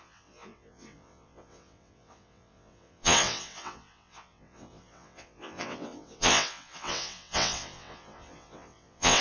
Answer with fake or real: fake